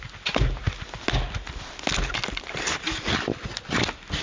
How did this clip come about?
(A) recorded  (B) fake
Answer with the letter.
A